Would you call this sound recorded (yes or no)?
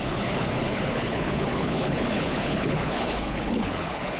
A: no